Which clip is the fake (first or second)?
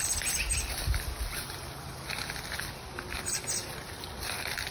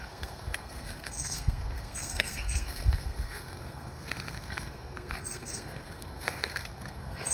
second